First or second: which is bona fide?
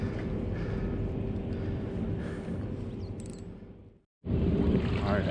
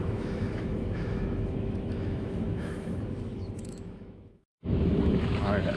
first